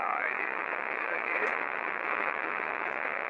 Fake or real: fake